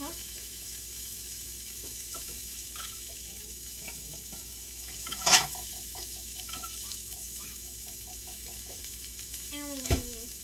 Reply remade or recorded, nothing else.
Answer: remade